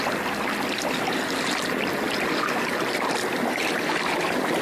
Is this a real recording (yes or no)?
yes